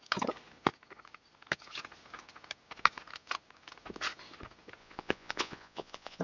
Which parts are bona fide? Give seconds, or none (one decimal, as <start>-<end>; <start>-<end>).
0.0-4.8